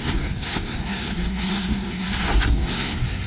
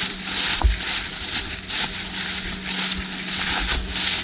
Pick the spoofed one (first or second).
first